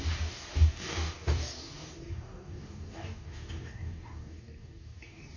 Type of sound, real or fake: fake